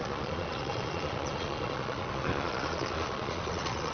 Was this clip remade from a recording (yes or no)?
yes